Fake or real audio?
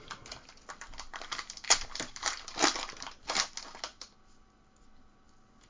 real